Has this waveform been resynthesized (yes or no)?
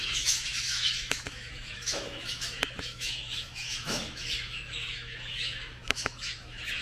yes